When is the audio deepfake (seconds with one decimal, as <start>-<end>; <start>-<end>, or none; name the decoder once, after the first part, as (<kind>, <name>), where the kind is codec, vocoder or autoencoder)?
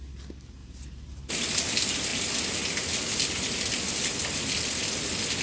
0.6-1.3 (vocoder, BigVGAN v2)